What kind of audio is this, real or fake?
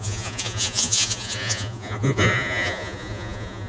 fake